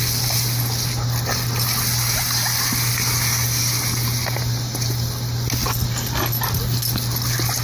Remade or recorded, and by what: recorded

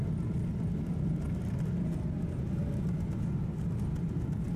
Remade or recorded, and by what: recorded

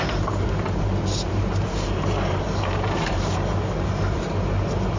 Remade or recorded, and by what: remade, vocoder, BigVGAN v2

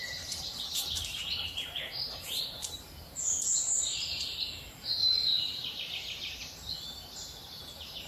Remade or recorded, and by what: remade, vocoder, BigVGAN v2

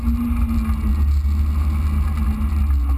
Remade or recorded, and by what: recorded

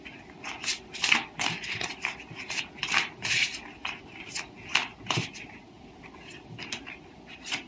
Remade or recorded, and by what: remade, vocoder, BigVGAN v2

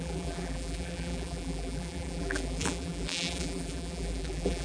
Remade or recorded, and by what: remade, vocoder, BigVGAN v2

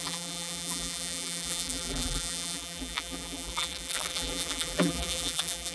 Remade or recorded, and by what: remade, vocoder, BigVGAN v2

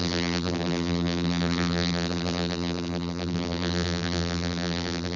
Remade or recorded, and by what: remade, vocoder, BigVGAN v2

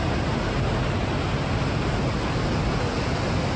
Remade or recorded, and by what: recorded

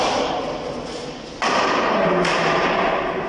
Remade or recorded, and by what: recorded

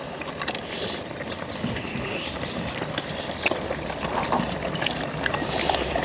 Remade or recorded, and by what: remade, vocoder, BigVGAN v2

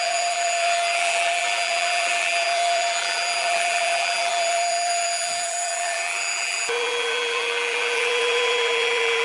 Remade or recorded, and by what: remade, vocoder, BigVGAN v2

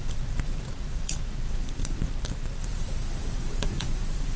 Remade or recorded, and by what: remade, vocoder, BigVGAN v2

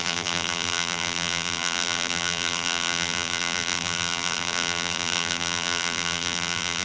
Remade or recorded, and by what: remade, vocoder, BigVGAN v2